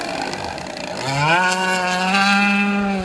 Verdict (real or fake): real